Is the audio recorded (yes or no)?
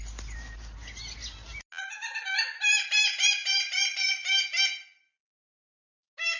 yes